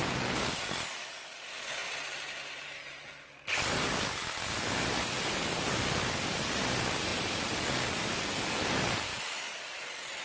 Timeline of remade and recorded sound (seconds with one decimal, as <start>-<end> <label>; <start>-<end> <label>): 0.0-10.2 recorded

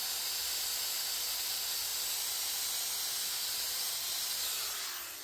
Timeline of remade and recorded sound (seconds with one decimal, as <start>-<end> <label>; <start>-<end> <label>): 0.0-5.2 recorded

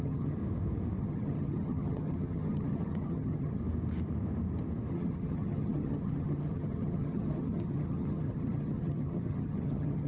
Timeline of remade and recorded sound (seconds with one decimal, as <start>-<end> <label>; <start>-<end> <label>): 0.0-0.4 remade; 0.4-1.0 recorded; 1.0-3.6 remade; 3.6-4.9 recorded; 4.9-10.1 remade

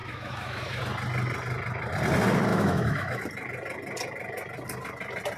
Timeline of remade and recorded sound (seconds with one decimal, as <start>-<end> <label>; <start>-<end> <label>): 0.0-0.8 remade; 0.8-2.5 recorded; 2.5-3.2 remade; 3.2-5.4 recorded

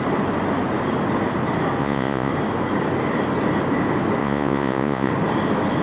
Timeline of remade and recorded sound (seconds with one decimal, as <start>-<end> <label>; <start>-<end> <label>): 0.0-1.8 recorded; 1.8-2.3 remade; 2.3-4.2 recorded; 4.2-5.1 remade; 5.1-5.8 recorded